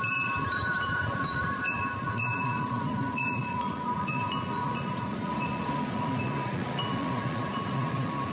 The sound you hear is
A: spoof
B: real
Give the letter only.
A